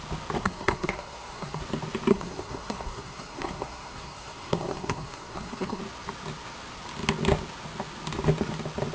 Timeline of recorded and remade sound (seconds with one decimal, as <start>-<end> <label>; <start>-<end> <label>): 0.0-0.4 recorded; 0.4-1.6 remade; 1.6-2.1 recorded; 2.1-5.8 remade; 5.8-8.9 recorded

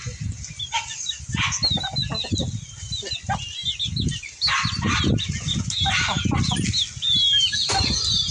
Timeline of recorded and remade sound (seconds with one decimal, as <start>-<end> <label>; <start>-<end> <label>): 0.0-8.3 recorded

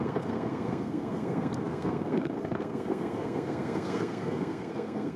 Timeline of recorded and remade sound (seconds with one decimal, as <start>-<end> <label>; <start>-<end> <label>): 0.0-5.2 remade